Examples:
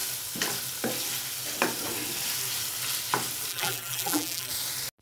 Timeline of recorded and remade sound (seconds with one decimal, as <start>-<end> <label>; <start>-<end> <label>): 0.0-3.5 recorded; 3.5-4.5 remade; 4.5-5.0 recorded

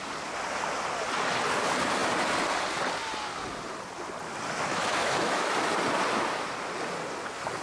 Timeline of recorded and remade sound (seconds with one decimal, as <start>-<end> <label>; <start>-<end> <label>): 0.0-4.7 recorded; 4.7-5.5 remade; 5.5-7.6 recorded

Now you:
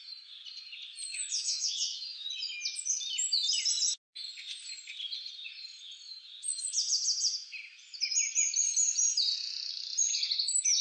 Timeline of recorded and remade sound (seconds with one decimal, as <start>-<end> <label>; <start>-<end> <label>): 0.0-1.1 recorded; 1.1-2.3 remade; 2.3-10.1 recorded; 10.1-10.8 remade

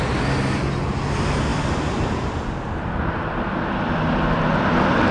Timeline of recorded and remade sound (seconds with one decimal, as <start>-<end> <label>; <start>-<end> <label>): 0.0-5.1 recorded

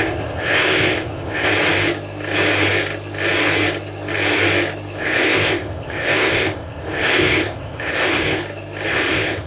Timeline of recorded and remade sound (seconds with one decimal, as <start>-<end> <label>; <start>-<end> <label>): 0.0-1.5 remade; 1.5-5.0 recorded; 5.0-8.4 remade; 8.4-8.9 recorded; 8.9-9.5 remade

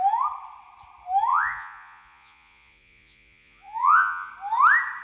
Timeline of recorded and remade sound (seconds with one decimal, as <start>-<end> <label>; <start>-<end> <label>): 0.0-1.3 recorded; 1.3-4.3 remade; 4.3-5.0 recorded

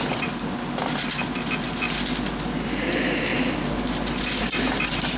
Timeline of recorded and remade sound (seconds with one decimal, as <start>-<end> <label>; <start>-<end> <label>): 0.0-5.2 recorded